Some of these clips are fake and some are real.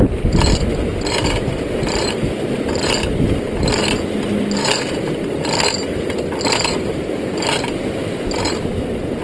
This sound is real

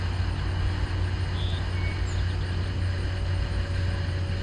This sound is real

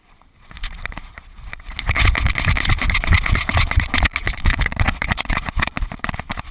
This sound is fake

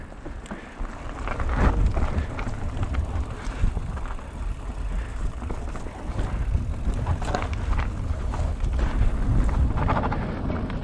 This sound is real